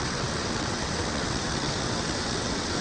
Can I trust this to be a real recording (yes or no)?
no